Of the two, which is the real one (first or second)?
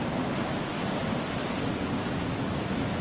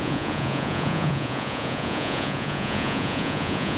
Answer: first